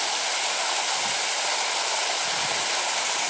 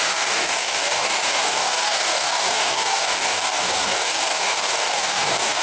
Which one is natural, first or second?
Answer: first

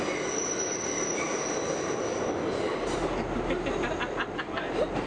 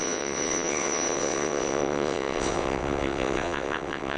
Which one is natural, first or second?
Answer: first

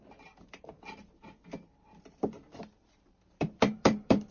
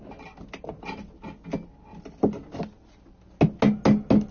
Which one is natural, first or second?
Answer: second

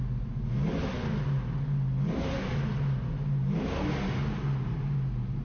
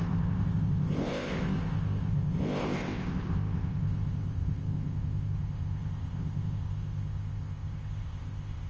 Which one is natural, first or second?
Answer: first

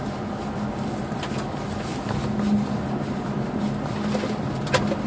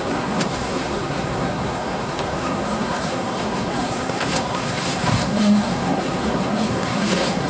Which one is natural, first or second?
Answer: first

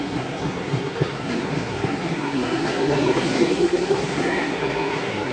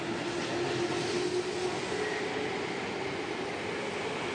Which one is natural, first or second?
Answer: second